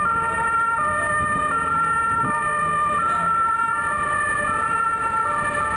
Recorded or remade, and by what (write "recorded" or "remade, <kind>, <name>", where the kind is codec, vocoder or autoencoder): recorded